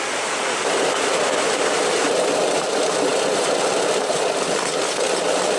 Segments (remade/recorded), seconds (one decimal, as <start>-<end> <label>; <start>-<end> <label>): 0.0-5.6 recorded